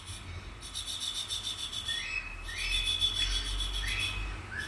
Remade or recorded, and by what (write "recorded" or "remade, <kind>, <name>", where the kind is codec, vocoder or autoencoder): recorded